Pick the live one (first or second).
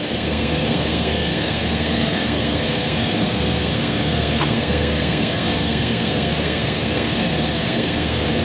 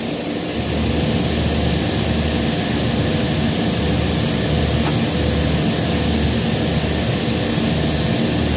second